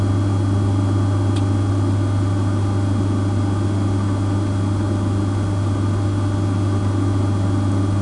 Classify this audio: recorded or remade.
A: recorded